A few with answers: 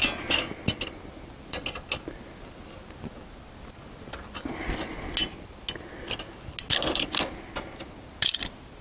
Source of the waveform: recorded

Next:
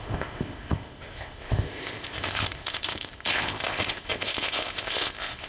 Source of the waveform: remade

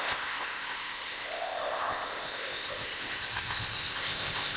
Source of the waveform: remade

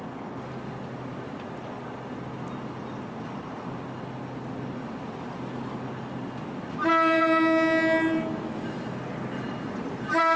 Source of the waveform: recorded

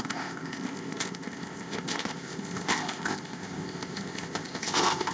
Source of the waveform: remade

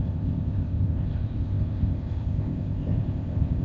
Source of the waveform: remade